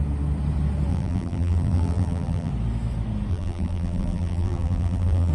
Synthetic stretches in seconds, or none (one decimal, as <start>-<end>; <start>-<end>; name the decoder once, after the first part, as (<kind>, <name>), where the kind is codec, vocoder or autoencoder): 0.9-2.5 (vocoder, BigVGAN v2); 3.3-5.3